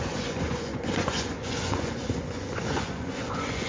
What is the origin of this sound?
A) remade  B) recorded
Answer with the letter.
A